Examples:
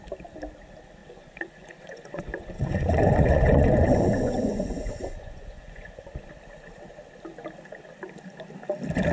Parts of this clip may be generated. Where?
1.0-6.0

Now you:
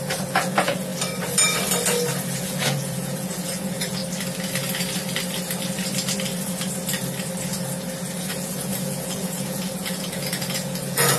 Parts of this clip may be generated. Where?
0.0-0.9; 2.4-4.0; 8.2-11.2

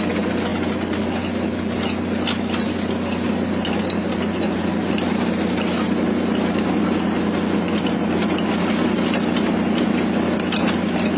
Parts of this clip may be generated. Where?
none

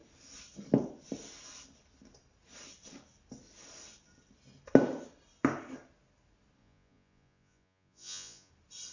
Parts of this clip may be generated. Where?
6.6-8.5